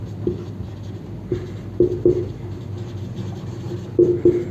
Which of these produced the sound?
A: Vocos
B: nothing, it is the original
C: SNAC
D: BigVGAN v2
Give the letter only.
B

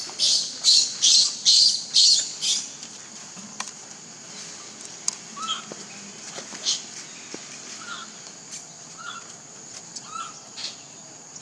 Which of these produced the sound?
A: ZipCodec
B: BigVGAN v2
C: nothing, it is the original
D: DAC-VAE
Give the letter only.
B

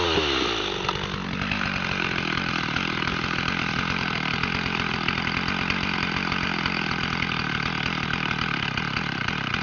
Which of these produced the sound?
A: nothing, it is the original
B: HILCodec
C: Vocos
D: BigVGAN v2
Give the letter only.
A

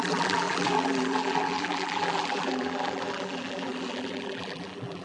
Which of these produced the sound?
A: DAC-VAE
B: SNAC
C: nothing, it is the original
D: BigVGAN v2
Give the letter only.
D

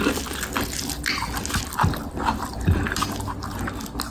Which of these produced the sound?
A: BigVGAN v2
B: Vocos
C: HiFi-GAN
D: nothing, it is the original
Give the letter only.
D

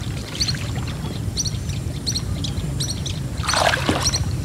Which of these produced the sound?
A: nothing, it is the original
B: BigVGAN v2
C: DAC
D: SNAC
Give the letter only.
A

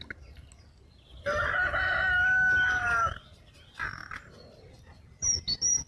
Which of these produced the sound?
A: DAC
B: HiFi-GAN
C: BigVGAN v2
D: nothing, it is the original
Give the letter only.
D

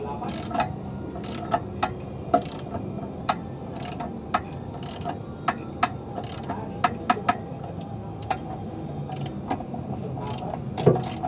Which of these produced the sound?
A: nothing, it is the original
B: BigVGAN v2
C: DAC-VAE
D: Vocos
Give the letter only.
A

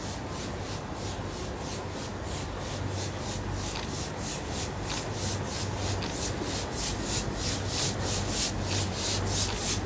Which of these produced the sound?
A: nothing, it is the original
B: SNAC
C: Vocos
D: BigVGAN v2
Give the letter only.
A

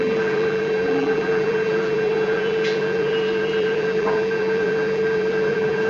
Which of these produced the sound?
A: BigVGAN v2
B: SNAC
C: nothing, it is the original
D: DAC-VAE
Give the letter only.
A